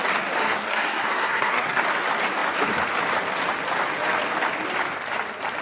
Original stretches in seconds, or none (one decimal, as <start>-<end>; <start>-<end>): 0.0-0.4; 1.8-5.6